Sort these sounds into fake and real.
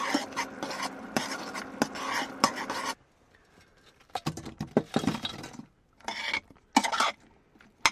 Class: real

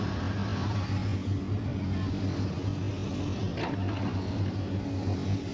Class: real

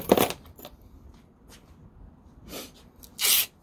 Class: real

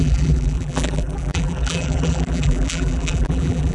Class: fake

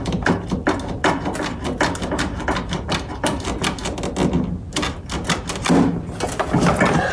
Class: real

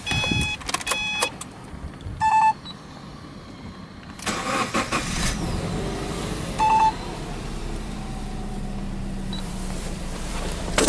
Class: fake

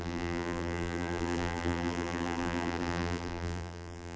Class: fake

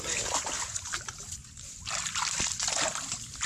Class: real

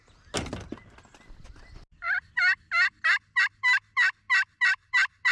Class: real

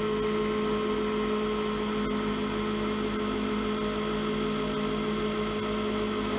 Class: real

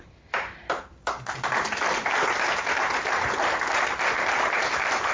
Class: real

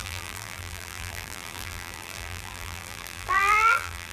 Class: fake